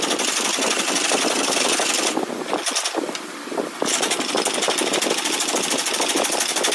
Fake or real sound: fake